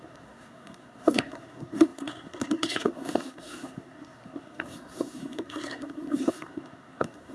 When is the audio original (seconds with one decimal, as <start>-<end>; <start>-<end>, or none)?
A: none